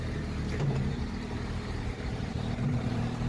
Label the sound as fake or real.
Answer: fake